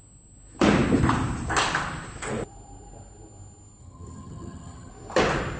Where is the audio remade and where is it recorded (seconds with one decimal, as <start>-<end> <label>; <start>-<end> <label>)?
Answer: 0.0-3.8 recorded; 3.8-4.9 remade; 4.9-5.6 recorded